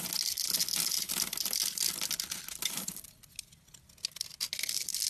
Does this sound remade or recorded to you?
recorded